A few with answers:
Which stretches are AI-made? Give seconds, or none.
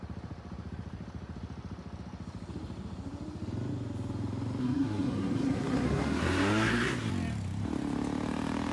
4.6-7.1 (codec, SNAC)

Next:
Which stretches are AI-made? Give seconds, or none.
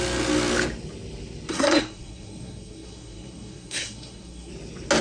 1.5-4.5 (codec, SNAC)